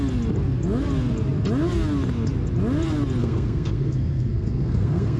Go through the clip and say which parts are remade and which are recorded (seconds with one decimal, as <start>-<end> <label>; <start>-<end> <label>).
0.0-3.2 recorded; 3.2-5.2 remade